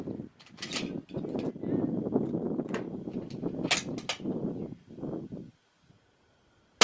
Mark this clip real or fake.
real